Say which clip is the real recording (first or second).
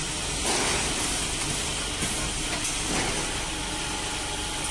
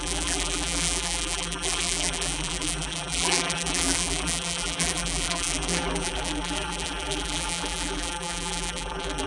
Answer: first